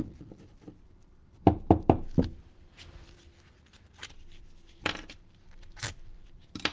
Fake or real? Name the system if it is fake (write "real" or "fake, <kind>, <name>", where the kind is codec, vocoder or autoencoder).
fake, vocoder, BigVGAN v2